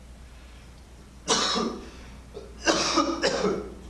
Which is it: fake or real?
real